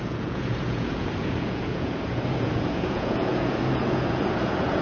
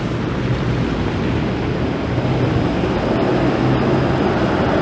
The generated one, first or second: first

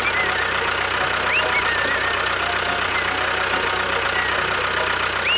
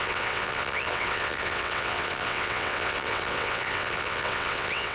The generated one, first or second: second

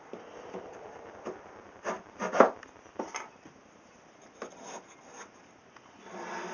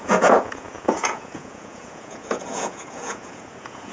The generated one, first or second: second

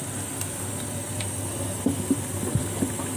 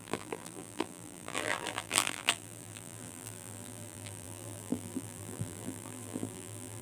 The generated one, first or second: second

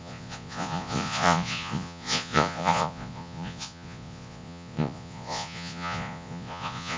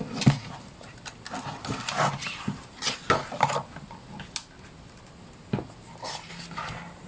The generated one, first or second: first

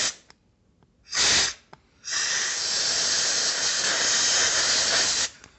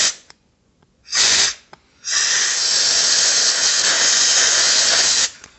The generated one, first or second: second